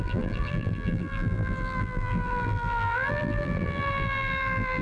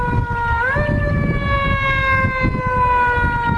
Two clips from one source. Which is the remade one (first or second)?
first